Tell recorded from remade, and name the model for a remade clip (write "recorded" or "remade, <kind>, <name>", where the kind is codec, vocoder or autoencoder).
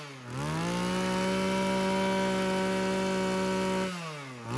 recorded